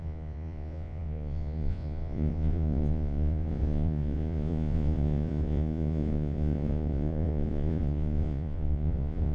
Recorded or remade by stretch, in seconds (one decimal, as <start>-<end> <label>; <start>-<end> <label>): 0.0-9.3 remade